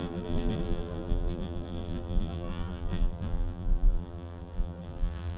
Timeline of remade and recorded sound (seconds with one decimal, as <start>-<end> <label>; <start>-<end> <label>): 0.0-5.4 remade